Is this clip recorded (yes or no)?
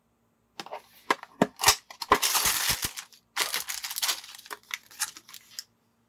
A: yes